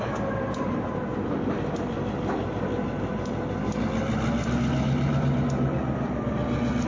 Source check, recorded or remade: recorded